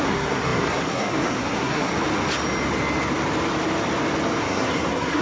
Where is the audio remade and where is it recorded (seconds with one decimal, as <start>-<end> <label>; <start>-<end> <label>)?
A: 0.0-1.9 remade; 1.9-4.4 recorded; 4.4-5.2 remade